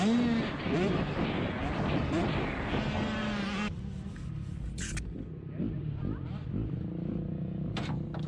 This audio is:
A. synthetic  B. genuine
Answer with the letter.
B